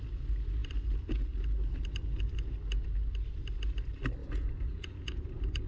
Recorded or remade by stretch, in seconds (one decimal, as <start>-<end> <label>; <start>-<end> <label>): 0.0-4.2 recorded; 4.2-5.2 remade; 5.2-5.7 recorded